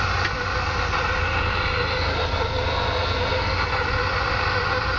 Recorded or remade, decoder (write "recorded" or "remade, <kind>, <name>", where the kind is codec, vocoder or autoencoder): recorded